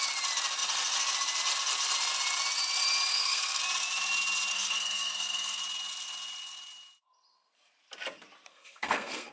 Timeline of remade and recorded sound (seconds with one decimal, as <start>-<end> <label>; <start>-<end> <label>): 0.0-3.1 recorded; 3.1-3.6 remade; 3.6-4.5 recorded; 4.5-5.6 remade; 5.6-8.5 recorded; 8.5-9.3 remade

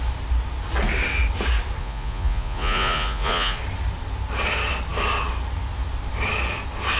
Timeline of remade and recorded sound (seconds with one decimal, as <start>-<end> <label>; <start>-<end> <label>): 0.0-1.8 recorded; 1.8-3.6 remade; 3.6-7.0 recorded

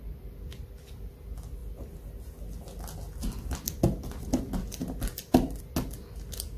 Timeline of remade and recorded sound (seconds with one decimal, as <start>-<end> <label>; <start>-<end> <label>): 0.0-6.6 recorded

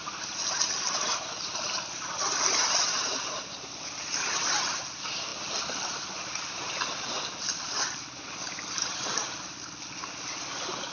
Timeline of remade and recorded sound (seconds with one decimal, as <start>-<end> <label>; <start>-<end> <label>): 0.0-10.9 recorded

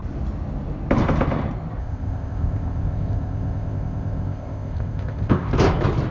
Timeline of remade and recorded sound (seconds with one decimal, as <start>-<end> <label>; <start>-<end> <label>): 0.0-1.8 recorded; 1.8-5.5 remade; 5.5-6.1 recorded